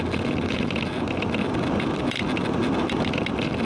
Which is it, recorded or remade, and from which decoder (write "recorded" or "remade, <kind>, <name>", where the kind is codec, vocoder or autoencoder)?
recorded